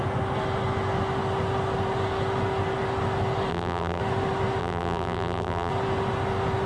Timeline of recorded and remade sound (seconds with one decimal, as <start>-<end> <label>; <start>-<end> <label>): 0.0-3.5 recorded; 3.5-4.0 remade; 4.0-4.6 recorded; 4.6-5.7 remade; 5.7-6.7 recorded